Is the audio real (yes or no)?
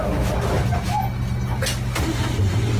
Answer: yes